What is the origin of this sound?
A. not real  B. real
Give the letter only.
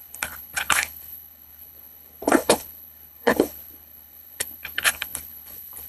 A